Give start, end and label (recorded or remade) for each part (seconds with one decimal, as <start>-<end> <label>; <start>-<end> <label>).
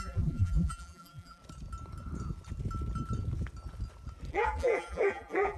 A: 0.0-1.4 remade; 1.4-4.3 recorded; 4.3-5.6 remade